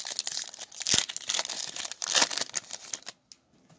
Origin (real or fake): real